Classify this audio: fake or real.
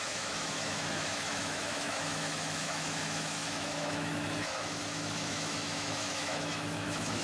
fake